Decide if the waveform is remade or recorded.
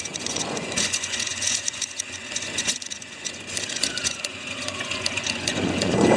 remade